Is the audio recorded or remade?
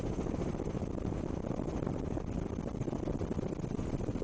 recorded